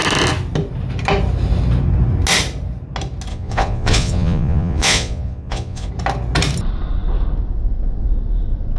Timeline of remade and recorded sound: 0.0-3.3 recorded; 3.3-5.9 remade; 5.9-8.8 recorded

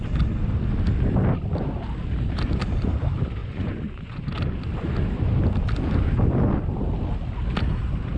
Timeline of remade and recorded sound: 0.0-3.4 recorded; 3.4-4.3 remade; 4.3-8.2 recorded